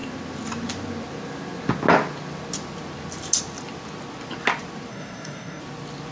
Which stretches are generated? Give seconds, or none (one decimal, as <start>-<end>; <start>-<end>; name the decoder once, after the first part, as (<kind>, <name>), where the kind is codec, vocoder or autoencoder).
4.9-5.6 (codec, DAC)